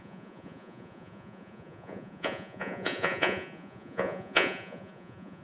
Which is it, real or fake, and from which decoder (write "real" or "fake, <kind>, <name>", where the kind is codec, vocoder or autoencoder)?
fake, vocoder, Vocos